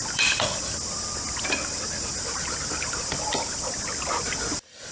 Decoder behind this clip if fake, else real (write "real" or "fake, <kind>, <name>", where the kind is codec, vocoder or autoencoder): fake, vocoder, BigVGAN v2